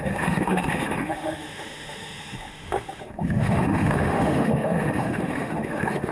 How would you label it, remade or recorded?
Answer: remade